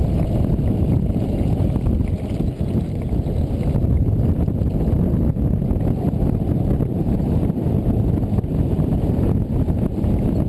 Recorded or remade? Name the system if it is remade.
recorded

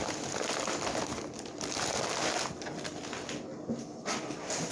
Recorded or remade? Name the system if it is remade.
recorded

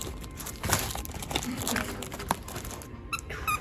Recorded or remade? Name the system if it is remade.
recorded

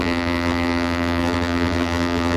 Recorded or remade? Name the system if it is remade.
remade, vocoder, BigVGAN v2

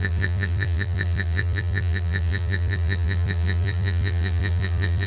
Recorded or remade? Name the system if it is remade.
remade, vocoder, BigVGAN v2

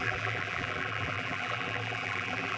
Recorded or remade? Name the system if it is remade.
remade, vocoder, BigVGAN v2